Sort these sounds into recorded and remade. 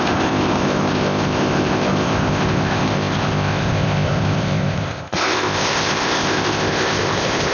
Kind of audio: remade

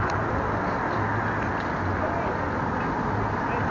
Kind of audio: recorded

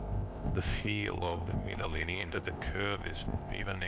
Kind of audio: remade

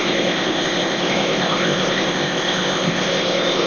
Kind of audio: remade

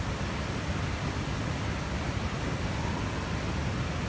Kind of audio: recorded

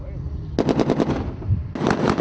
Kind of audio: recorded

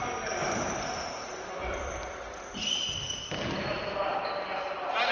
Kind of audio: recorded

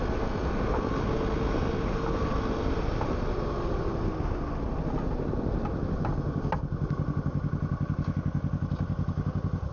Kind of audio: recorded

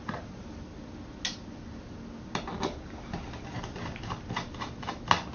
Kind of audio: recorded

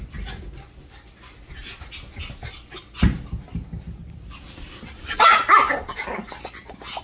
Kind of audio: recorded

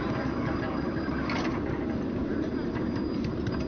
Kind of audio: recorded